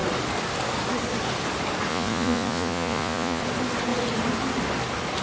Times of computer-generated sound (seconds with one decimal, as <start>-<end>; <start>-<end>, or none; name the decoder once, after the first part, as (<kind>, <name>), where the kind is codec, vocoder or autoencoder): 1.9-3.4 (vocoder, Vocos)